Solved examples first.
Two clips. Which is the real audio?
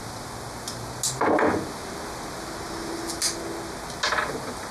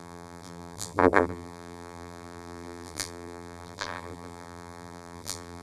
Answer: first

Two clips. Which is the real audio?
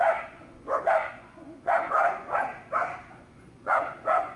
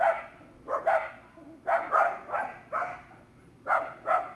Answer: second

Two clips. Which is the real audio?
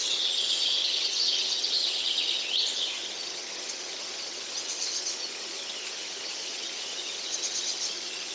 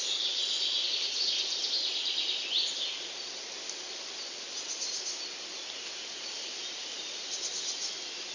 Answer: second